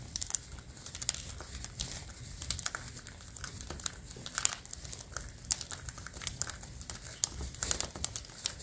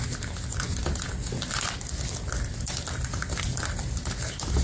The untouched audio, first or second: second